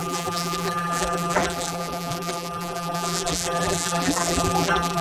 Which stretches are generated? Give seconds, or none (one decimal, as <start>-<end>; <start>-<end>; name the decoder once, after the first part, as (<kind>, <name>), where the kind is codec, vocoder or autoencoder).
0.0-5.0 (vocoder, BigVGAN v2)